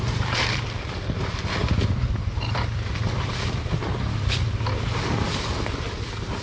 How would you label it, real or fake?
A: real